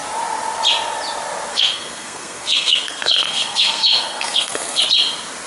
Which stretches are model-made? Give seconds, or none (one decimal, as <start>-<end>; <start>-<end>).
1.5-4.8